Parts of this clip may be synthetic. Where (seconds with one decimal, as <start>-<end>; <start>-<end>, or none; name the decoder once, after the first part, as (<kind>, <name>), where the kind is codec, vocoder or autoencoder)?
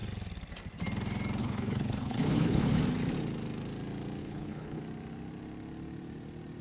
1.4-2.8 (codec, HILCodec); 4.2-4.8